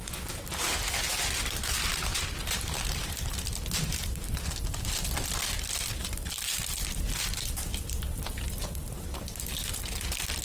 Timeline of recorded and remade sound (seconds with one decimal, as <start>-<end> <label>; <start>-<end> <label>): 0.0-2.1 recorded; 2.1-3.4 remade; 3.4-10.4 recorded